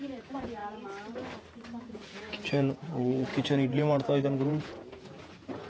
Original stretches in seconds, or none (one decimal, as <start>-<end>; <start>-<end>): 0.6-1.8